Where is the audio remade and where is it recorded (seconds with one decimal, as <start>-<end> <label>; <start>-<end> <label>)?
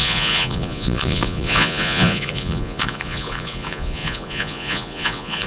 0.0-5.5 remade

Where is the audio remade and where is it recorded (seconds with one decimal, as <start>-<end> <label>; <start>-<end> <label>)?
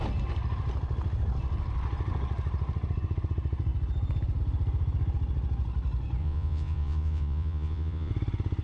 0.0-6.2 recorded; 6.2-8.1 remade; 8.1-8.6 recorded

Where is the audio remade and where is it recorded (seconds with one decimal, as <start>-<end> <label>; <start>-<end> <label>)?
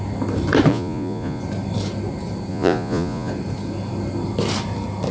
0.0-0.7 recorded; 0.7-1.4 remade; 1.4-2.5 recorded; 2.5-3.3 remade; 3.3-5.1 recorded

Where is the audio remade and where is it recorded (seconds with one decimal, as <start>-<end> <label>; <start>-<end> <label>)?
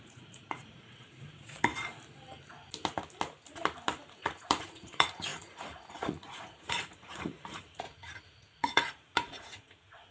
0.0-1.7 remade; 1.7-4.1 recorded; 4.1-10.1 remade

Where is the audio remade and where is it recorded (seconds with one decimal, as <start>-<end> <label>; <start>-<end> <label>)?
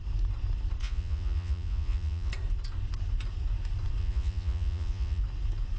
0.0-0.8 recorded; 0.8-2.3 remade; 2.3-4.0 recorded; 4.0-5.2 remade; 5.2-5.8 recorded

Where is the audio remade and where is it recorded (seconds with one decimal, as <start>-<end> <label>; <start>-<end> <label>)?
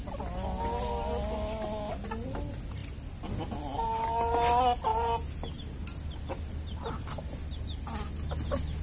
0.0-8.8 recorded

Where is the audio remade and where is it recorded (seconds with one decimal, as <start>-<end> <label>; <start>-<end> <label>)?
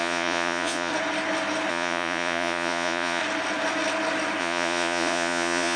0.0-0.9 remade; 0.9-1.7 recorded; 1.7-3.2 remade; 3.2-4.4 recorded; 4.4-5.8 remade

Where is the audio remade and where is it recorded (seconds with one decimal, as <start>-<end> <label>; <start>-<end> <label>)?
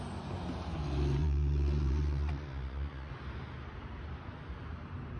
0.0-1.2 recorded; 1.2-3.1 remade; 3.1-5.2 recorded